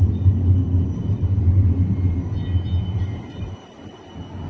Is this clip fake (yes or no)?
no